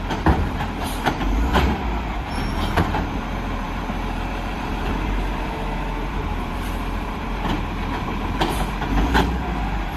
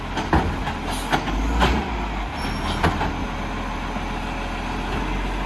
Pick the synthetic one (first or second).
first